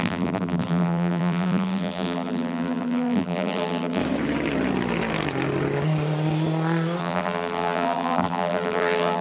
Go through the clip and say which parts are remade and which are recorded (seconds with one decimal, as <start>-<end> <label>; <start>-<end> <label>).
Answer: 0.0-4.0 remade; 4.0-7.0 recorded; 7.0-9.2 remade